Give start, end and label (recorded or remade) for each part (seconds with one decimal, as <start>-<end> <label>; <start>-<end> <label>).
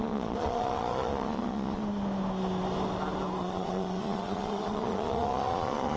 0.0-1.8 remade; 1.8-3.4 recorded; 3.4-6.0 remade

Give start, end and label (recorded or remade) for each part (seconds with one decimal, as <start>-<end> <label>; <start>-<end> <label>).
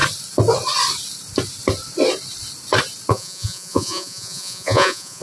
0.0-3.1 recorded; 3.1-5.2 remade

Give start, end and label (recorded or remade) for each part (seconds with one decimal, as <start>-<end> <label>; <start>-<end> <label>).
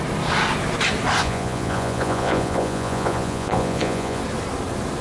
0.0-1.2 recorded; 1.2-4.2 remade; 4.2-5.0 recorded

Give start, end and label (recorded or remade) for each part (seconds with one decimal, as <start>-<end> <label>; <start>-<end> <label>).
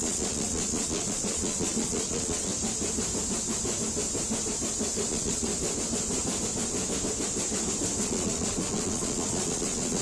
0.0-2.5 remade; 2.5-5.1 recorded; 5.1-5.5 remade; 5.5-8.0 recorded; 8.0-10.0 remade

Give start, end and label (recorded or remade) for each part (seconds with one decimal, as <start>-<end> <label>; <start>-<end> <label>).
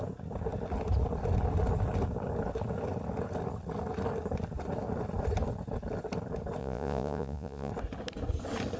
0.0-6.6 recorded; 6.6-7.7 remade; 7.7-8.8 recorded